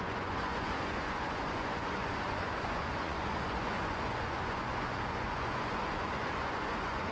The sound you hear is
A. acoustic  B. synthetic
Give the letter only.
B